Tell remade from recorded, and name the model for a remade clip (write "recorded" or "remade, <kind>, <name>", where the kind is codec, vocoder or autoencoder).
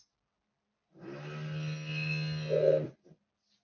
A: recorded